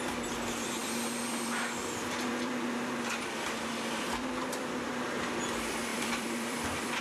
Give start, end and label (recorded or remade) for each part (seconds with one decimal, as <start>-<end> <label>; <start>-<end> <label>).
0.0-0.8 recorded; 0.8-4.9 remade; 4.9-5.9 recorded; 5.9-7.0 remade